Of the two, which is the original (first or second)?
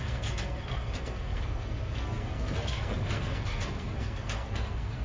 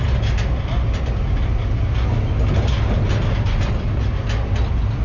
second